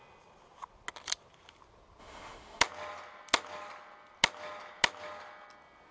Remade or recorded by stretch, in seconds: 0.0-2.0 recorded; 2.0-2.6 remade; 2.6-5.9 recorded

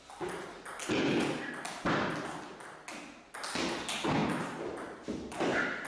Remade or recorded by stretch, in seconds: 0.0-5.9 recorded